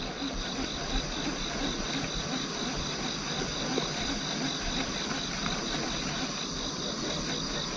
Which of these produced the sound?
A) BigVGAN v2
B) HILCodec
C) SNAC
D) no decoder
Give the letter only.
D